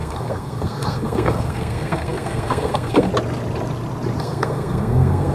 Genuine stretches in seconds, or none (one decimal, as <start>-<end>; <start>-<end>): 3.1-4.2